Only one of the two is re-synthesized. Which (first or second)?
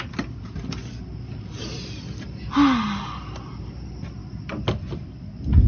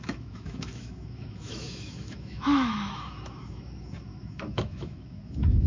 second